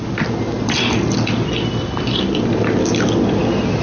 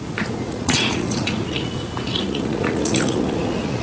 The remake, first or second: second